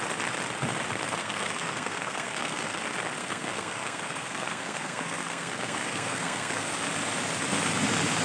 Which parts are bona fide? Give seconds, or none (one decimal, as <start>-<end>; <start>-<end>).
0.0-1.2; 2.8-3.2; 6.7-8.2